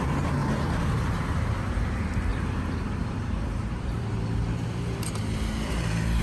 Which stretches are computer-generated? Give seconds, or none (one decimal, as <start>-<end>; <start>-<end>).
2.3-6.2